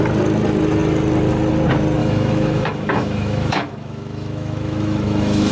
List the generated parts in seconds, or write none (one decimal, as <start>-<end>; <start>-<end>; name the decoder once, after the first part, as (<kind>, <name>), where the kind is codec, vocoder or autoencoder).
2.0-5.5 (autoencoder, DAC-VAE)